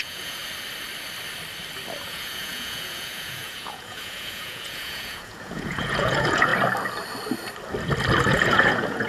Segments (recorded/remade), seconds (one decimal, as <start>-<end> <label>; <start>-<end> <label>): 0.0-0.4 remade; 0.4-2.1 recorded; 2.1-6.5 remade; 6.5-8.3 recorded; 8.3-9.1 remade